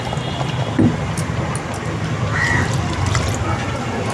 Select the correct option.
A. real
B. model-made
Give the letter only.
A